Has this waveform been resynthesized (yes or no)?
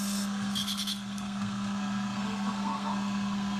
yes